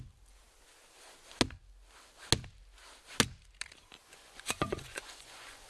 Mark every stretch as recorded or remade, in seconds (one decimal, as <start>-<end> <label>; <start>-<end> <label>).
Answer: 0.0-4.0 recorded; 4.0-5.7 remade